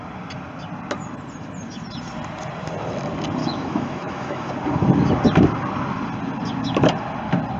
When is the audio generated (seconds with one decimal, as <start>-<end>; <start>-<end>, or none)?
3.4-4.5